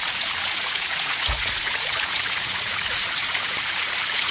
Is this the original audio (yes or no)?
no